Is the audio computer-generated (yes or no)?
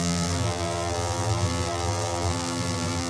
yes